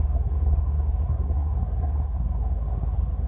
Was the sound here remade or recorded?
remade